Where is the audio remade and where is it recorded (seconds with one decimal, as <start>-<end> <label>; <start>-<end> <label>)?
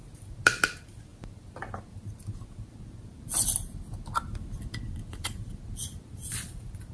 0.0-6.9 recorded